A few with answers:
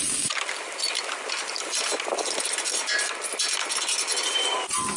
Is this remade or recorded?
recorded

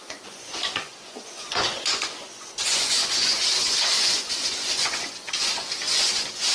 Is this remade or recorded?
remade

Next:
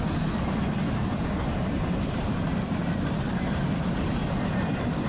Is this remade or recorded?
recorded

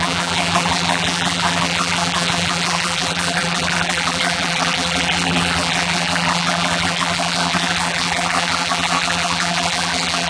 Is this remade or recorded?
remade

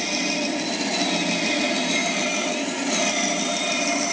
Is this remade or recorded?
recorded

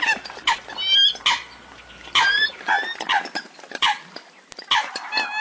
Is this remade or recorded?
recorded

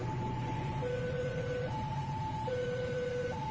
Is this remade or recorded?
remade